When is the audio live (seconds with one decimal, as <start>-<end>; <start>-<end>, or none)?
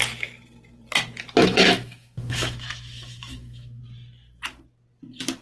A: 0.0-1.4; 3.8-5.4